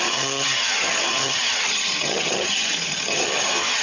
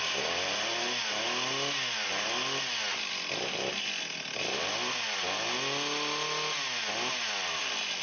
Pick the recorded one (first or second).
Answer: second